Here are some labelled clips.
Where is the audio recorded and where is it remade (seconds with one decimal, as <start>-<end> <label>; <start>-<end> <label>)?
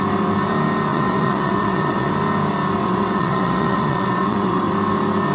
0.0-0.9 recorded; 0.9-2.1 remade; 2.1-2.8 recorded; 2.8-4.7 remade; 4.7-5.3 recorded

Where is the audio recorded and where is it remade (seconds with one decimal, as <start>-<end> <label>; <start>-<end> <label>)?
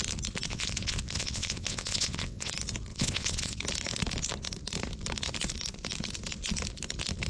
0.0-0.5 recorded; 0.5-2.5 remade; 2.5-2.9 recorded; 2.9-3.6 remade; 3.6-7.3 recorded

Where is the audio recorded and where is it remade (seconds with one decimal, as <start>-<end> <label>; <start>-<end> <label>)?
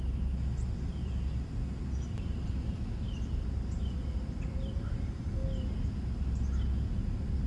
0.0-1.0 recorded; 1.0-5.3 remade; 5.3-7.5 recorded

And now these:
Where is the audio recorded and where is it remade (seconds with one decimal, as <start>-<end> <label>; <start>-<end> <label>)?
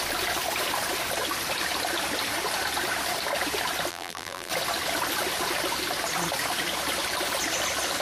0.0-3.9 recorded; 3.9-4.5 remade; 4.5-8.0 recorded